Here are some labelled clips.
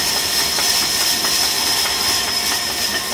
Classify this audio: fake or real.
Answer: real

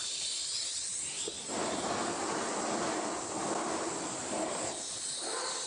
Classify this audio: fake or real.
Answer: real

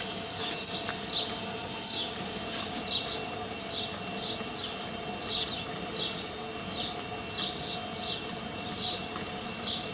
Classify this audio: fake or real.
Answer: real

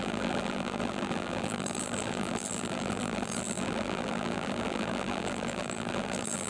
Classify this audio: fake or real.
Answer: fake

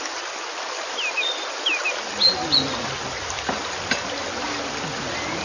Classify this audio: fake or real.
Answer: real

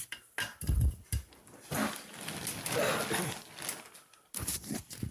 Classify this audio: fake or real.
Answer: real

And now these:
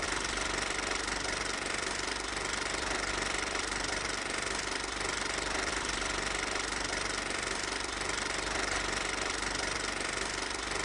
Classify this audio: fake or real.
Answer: fake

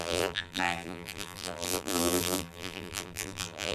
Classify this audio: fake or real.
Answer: fake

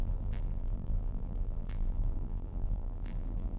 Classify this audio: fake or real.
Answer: fake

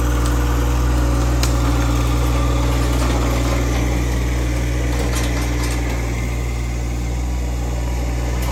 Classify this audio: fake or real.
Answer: real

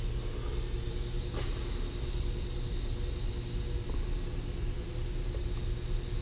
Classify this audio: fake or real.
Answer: real